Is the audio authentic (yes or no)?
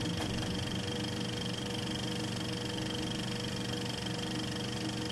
yes